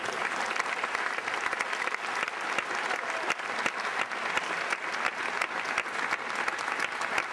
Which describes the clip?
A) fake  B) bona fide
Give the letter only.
B